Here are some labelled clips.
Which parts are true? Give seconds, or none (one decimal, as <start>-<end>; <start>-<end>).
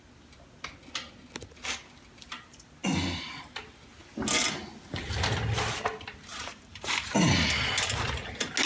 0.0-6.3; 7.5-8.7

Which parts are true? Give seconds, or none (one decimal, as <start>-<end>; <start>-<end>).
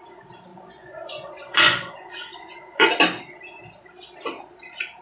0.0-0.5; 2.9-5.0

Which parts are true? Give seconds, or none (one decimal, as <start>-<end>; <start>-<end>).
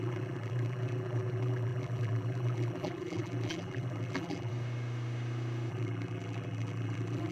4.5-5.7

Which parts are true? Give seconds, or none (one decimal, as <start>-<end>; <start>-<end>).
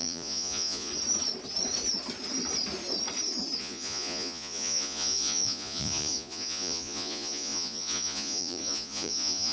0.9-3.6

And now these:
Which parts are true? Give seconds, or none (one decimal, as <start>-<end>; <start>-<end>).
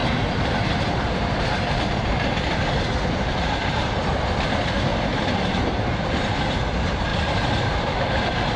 2.3-4.9; 6.2-7.1; 8.2-8.6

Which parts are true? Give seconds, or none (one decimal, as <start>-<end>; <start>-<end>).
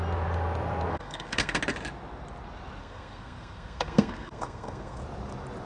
0.0-0.9; 1.6-2.8; 5.0-5.7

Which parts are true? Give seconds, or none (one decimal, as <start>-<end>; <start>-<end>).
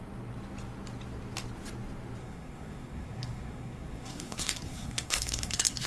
0.0-2.2